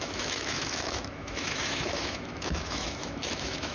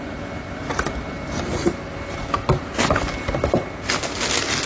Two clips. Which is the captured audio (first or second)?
second